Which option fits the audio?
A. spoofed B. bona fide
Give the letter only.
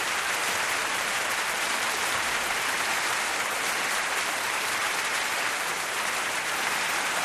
B